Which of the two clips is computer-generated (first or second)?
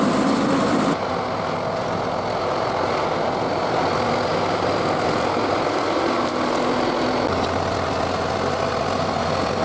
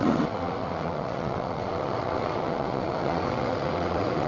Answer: second